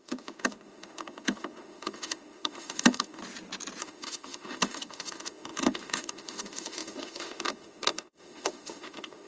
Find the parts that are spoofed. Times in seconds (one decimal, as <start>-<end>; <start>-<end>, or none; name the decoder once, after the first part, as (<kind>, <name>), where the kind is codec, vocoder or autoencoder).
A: 0.0-3.2 (autoencoder, DAC-VAE); 3.8-9.3